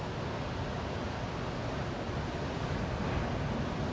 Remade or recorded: recorded